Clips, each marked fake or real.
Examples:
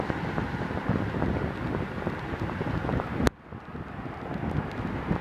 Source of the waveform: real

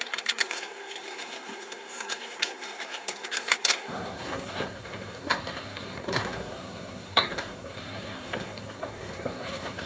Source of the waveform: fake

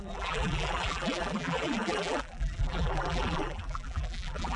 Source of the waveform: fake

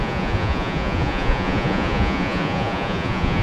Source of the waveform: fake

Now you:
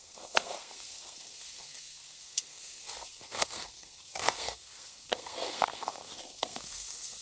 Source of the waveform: fake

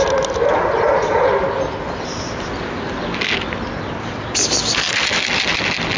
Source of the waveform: real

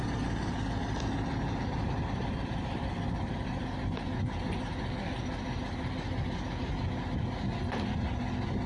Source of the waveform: real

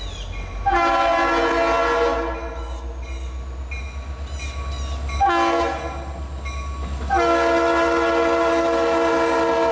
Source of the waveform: real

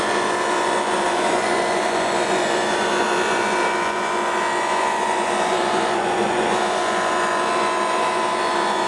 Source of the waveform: fake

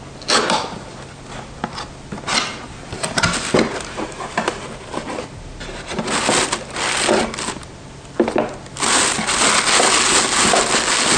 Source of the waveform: real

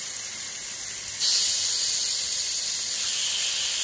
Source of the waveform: real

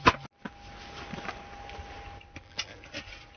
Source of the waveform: real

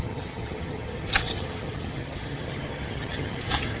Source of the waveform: fake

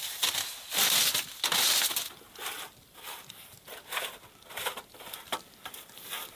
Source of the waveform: real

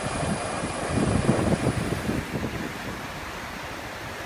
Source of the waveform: real